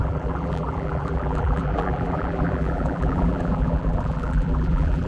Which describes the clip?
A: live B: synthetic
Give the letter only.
B